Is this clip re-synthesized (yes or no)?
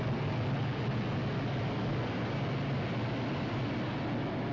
no